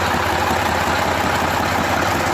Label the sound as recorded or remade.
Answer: recorded